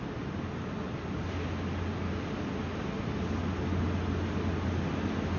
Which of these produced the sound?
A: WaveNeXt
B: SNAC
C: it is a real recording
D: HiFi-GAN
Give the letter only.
C